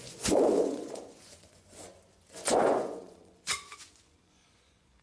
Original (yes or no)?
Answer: no